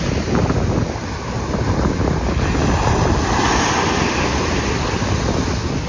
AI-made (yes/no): no